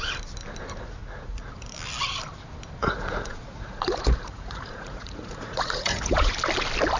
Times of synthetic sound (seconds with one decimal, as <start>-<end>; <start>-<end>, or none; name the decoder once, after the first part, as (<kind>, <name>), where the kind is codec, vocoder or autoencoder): 1.0-1.5 (vocoder, Vocos); 2.8-6.3